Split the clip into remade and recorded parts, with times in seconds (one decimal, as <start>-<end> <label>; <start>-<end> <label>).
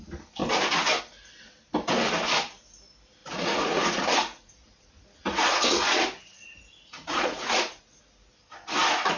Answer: 0.0-3.2 recorded; 3.2-8.0 remade; 8.0-9.2 recorded